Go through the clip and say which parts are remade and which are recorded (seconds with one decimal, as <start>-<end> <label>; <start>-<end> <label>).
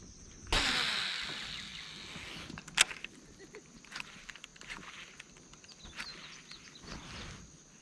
0.0-7.8 recorded